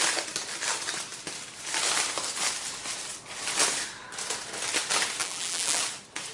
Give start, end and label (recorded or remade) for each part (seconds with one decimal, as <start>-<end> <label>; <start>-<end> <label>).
0.0-5.2 recorded; 5.2-5.8 remade; 5.8-6.3 recorded